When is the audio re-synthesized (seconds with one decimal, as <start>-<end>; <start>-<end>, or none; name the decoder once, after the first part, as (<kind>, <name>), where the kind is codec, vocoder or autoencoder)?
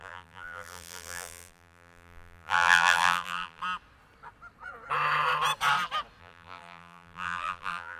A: 0.0-3.6 (vocoder, BigVGAN v2); 6.2-8.0